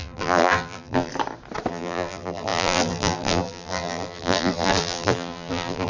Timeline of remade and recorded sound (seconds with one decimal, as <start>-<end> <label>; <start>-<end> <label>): 0.0-1.1 remade; 1.1-1.7 recorded; 1.7-5.9 remade

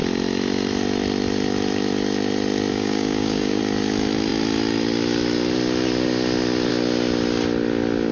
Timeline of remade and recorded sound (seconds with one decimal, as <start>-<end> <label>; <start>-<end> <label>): 0.0-2.7 recorded; 2.7-3.6 remade; 3.6-8.1 recorded

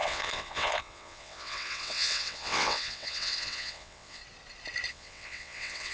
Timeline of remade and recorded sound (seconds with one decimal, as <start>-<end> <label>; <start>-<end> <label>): 0.0-4.2 remade; 4.2-4.9 recorded; 4.9-5.9 remade

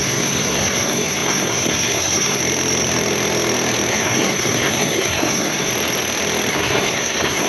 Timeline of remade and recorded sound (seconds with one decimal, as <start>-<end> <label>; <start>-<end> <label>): 0.0-2.4 remade; 2.4-3.9 recorded; 3.9-5.7 remade; 5.7-6.5 recorded; 6.5-7.5 remade

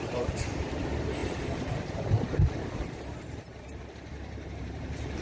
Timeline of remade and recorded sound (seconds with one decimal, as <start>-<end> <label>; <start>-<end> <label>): 0.0-4.1 remade; 4.1-4.6 recorded; 4.6-5.2 remade

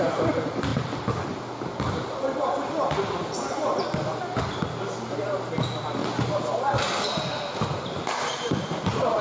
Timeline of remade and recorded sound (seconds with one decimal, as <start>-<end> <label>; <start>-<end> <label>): 0.0-0.7 remade; 0.7-5.1 recorded; 5.1-6.0 remade; 6.0-7.8 recorded; 7.8-9.2 remade

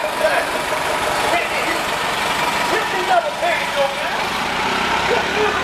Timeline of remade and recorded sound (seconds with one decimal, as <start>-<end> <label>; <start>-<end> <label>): 0.0-2.0 remade; 2.0-3.3 recorded; 3.3-5.6 remade